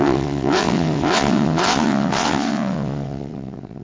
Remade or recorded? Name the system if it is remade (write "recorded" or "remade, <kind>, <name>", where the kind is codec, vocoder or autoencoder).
remade, vocoder, WaveNeXt